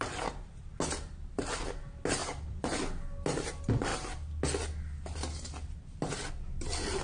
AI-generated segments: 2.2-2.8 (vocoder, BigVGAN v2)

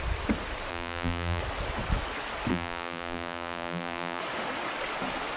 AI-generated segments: 0.7-1.4 (vocoder, BigVGAN v2); 2.5-4.2